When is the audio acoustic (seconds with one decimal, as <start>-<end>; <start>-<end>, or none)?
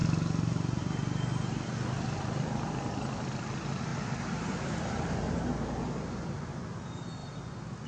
0.0-3.9; 5.0-7.9